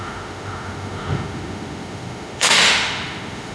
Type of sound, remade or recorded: remade